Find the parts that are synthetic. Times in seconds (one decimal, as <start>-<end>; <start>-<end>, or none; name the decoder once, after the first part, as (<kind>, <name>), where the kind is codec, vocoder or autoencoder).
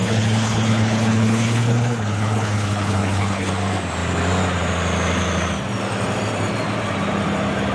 0.0-3.5 (codec, HILCodec)